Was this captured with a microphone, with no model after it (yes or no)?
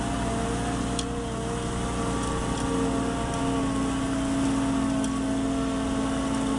yes